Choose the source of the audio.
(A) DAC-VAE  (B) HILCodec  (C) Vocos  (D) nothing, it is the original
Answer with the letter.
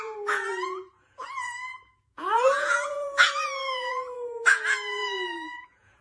C